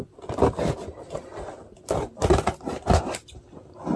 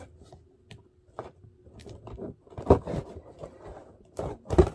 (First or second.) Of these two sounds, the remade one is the second